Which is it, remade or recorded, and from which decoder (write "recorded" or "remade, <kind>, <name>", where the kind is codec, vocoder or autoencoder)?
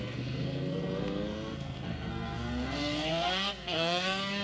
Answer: remade, codec, SNAC